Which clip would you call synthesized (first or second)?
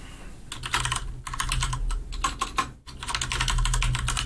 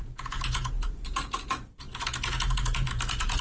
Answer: second